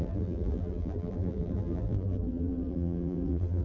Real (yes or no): no